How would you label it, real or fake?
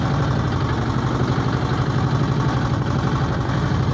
real